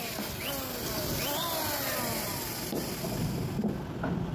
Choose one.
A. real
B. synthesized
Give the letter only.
A